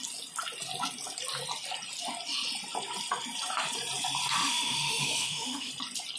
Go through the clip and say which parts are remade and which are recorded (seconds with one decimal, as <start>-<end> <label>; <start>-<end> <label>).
0.0-4.4 recorded; 4.4-5.7 remade; 5.7-6.2 recorded